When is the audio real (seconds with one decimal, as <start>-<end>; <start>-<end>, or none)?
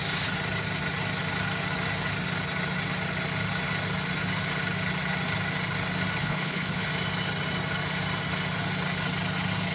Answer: 0.0-6.2; 6.9-9.7